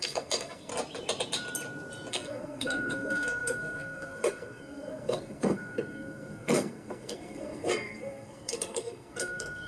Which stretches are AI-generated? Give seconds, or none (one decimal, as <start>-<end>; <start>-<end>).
0.0-0.7; 2.1-9.7